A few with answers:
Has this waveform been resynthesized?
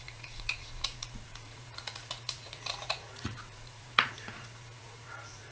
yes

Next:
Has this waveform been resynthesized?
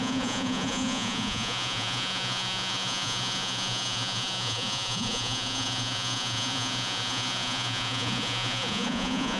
yes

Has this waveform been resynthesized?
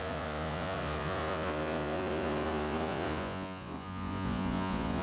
yes